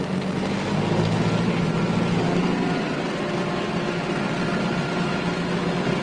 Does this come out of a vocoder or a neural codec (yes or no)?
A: no